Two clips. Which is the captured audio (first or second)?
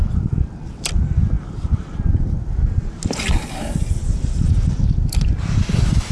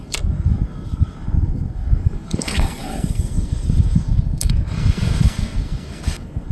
first